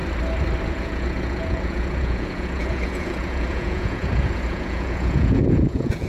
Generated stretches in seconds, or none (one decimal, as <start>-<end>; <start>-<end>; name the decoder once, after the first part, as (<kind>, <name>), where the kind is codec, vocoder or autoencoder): 0.7-6.1 (vocoder, Vocos)